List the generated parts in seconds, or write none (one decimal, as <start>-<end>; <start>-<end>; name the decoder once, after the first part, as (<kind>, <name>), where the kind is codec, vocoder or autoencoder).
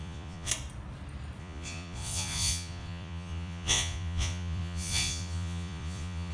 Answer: 0.0-0.5 (vocoder, Vocos); 1.4-6.3